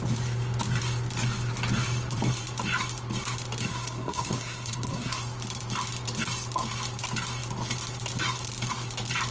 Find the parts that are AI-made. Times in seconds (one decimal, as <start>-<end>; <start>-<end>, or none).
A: 3.7-5.2